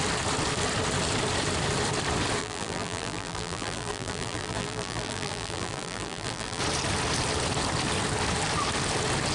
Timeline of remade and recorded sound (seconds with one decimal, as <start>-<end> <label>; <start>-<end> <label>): 0.0-2.4 recorded; 2.4-6.6 remade; 6.6-9.3 recorded